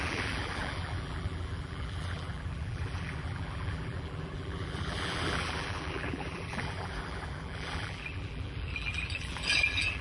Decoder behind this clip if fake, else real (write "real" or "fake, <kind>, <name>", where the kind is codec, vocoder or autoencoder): fake, vocoder, BigVGAN v2